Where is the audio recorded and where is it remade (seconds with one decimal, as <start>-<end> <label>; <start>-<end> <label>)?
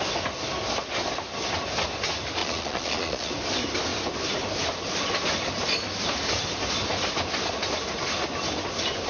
0.0-2.4 recorded; 2.4-3.3 remade; 3.3-9.1 recorded